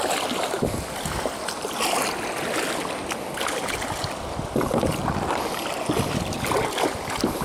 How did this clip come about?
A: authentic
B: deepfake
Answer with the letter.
A